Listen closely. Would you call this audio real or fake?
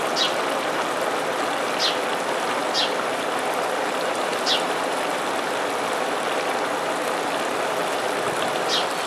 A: fake